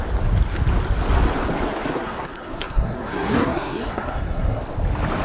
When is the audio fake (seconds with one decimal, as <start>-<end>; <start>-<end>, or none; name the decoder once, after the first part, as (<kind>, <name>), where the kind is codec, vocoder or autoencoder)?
1.8-4.6 (codec, SNAC)

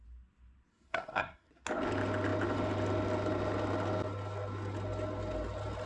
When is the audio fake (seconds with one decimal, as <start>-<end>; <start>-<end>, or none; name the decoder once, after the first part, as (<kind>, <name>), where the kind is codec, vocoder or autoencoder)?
0.7-1.5 (codec, SNAC)

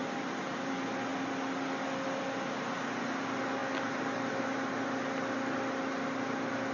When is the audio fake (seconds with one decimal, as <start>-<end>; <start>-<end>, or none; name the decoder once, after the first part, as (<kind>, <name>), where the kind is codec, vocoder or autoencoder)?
none